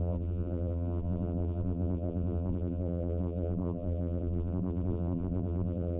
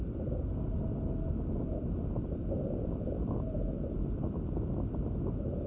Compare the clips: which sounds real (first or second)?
second